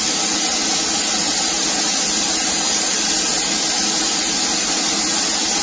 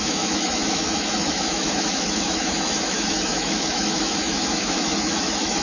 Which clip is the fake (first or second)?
second